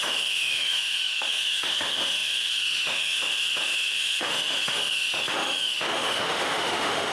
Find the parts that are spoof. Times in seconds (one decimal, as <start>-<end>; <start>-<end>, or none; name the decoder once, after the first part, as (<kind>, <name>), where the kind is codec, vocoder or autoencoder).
0.0-7.1 (autoencoder, DAC-VAE)

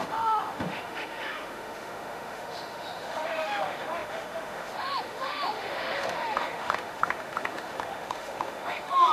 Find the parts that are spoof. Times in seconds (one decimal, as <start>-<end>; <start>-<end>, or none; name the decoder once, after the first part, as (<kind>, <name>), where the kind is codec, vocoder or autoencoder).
0.0-9.1 (autoencoder, DAC-VAE)